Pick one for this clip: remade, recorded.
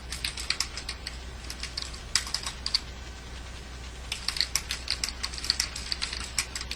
recorded